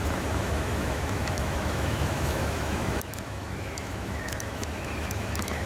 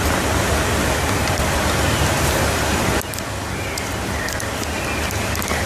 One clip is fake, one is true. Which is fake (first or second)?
first